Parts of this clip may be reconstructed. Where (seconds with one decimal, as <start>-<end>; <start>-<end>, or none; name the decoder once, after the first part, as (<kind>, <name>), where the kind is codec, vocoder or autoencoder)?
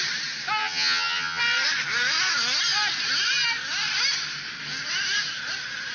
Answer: 0.6-1.4 (vocoder, HiFi-GAN)